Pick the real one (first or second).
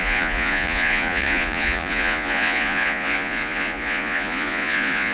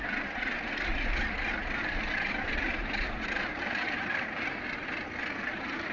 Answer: second